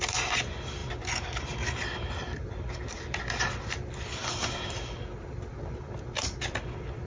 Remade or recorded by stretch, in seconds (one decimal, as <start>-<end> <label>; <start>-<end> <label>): 0.0-7.1 recorded